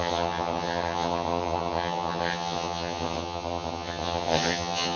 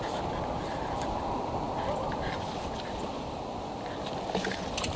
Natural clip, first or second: second